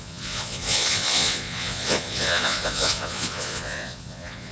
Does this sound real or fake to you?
fake